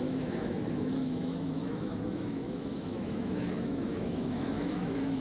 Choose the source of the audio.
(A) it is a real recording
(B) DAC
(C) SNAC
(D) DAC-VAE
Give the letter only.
D